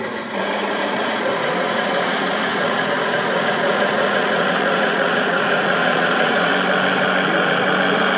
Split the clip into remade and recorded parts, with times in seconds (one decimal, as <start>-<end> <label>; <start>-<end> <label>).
0.0-6.5 remade; 6.5-8.2 recorded